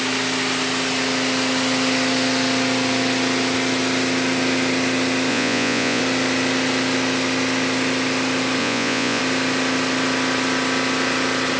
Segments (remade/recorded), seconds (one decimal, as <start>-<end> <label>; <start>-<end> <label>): 0.0-5.3 recorded; 5.3-6.0 remade; 6.0-8.6 recorded; 8.6-9.2 remade; 9.2-11.6 recorded